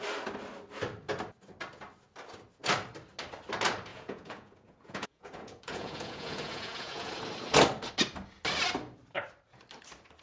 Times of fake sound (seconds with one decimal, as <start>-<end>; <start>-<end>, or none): 3.9-7.1